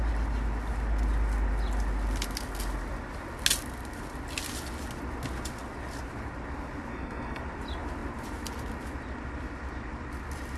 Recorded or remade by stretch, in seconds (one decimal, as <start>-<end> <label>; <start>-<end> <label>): 0.0-6.9 recorded; 6.9-7.4 remade; 7.4-10.6 recorded